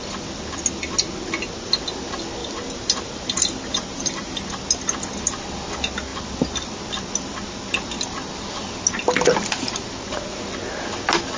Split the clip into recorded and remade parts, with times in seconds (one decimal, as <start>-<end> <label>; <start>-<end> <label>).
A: 0.0-2.4 recorded; 2.4-4.4 remade; 4.4-11.4 recorded